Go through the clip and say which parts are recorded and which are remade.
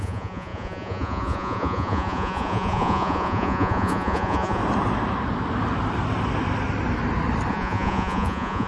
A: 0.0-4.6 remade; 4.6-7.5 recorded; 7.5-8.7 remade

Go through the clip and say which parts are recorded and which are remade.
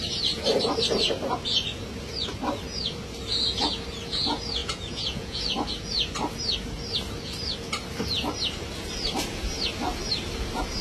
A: 0.0-4.6 recorded; 4.6-5.4 remade; 5.4-10.8 recorded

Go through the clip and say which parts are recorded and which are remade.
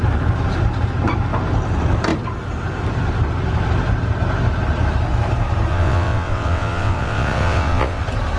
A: 0.0-5.7 recorded; 5.7-8.0 remade; 8.0-8.4 recorded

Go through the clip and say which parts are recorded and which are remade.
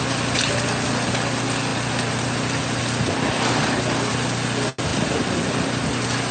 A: 0.0-6.3 recorded